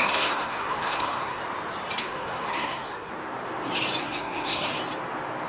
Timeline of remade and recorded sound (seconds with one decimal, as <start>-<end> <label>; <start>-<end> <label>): 0.0-1.4 remade; 1.4-2.0 recorded; 2.0-3.1 remade; 3.1-4.0 recorded; 4.0-4.7 remade; 4.7-5.5 recorded